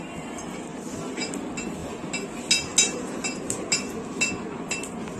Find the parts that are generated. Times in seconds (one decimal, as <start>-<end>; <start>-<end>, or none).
none